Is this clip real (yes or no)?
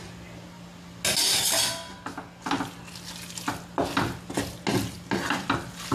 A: yes